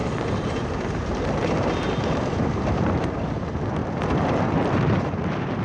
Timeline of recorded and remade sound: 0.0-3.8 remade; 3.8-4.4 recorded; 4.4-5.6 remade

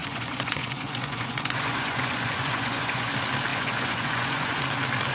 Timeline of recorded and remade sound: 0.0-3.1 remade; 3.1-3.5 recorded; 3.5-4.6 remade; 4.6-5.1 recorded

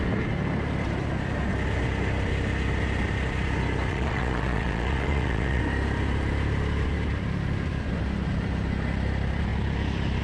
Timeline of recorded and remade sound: 0.0-3.9 recorded; 3.9-5.6 remade; 5.6-10.2 recorded

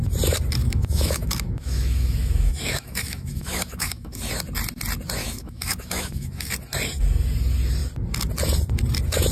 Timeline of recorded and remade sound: 0.0-0.6 recorded; 0.6-4.3 remade; 4.3-5.2 recorded; 5.2-6.5 remade; 6.5-9.3 recorded

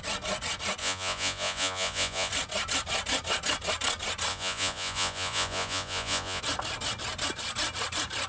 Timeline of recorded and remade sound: 0.0-0.8 recorded; 0.8-2.3 remade; 2.3-4.3 recorded; 4.3-6.4 remade; 6.4-8.3 recorded